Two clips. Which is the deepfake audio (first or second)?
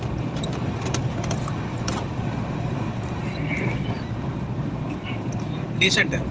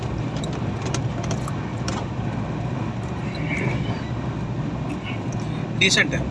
first